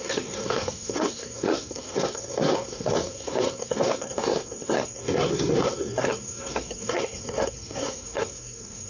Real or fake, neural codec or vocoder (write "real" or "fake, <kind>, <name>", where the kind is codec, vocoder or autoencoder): fake, codec, SNAC